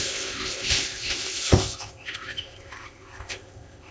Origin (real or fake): fake